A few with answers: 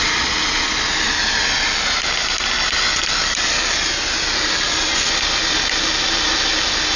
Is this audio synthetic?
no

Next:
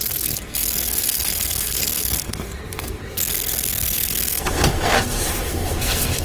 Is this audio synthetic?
yes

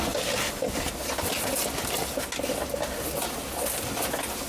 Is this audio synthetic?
no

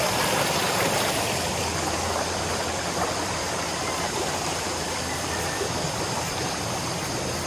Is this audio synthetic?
yes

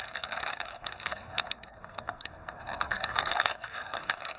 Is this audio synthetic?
yes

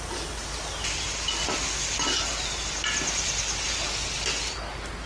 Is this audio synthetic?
no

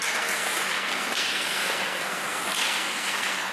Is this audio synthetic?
yes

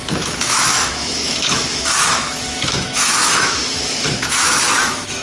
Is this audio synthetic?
yes